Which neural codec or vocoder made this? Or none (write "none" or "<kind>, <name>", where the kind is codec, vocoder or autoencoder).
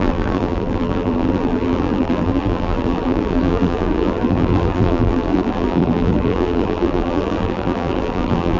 vocoder, BigVGAN v2